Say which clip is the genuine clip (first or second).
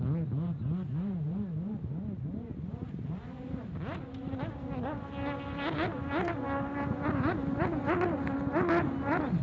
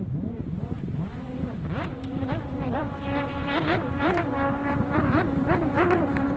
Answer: first